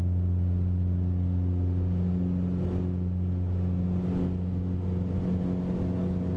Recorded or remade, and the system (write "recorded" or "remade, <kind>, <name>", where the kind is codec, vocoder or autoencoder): recorded